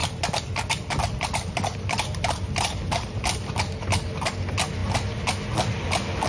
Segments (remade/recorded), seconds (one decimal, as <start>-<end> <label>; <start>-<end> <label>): 0.0-6.3 recorded